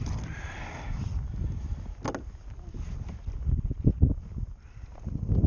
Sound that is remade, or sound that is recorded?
recorded